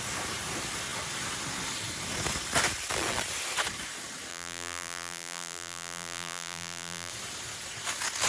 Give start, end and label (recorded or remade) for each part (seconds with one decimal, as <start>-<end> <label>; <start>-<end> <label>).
0.0-4.3 recorded; 4.3-7.1 remade; 7.1-8.3 recorded